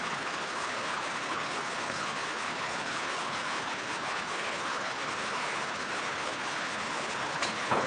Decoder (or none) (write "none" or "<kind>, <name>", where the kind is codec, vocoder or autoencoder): codec, HILCodec